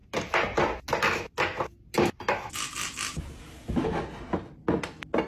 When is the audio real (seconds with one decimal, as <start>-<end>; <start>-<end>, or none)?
0.0-5.3